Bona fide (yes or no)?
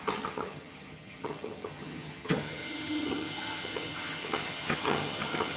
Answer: no